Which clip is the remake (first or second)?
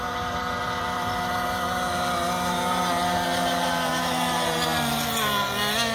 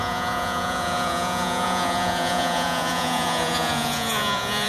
second